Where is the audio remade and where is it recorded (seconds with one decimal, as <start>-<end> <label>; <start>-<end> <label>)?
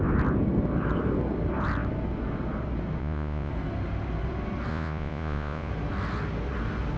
0.0-3.0 recorded; 3.0-3.5 remade; 3.5-4.7 recorded; 4.7-5.7 remade; 5.7-7.0 recorded